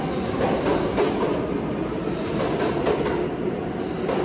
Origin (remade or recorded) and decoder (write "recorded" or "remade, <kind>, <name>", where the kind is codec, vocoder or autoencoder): recorded